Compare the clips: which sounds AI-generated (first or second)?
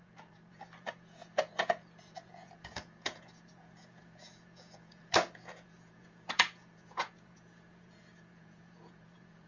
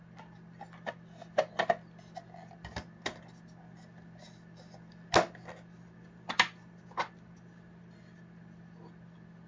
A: first